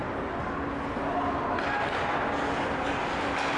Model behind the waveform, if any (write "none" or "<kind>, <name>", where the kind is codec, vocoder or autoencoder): none